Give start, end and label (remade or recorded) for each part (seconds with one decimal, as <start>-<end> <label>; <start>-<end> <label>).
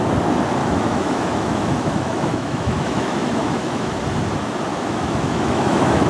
0.0-0.6 recorded; 0.6-3.9 remade; 3.9-4.7 recorded; 4.7-6.1 remade